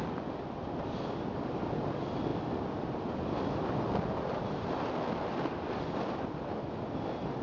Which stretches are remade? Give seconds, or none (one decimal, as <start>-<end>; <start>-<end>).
none